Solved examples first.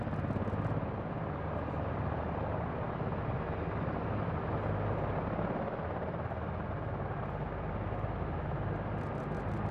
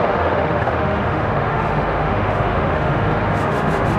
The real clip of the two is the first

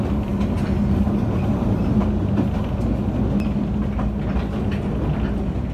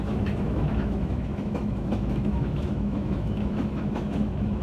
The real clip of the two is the first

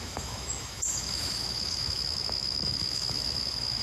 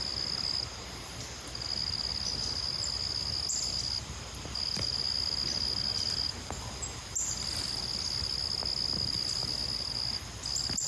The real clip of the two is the second